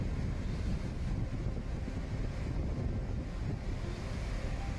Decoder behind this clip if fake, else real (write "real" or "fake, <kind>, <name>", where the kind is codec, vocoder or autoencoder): real